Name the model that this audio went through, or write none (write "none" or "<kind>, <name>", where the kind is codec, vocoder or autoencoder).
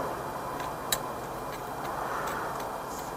none